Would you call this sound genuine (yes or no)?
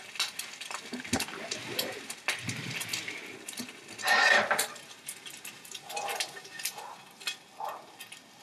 yes